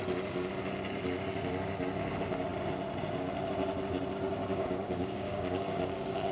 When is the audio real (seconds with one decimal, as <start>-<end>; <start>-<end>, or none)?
0.0-4.4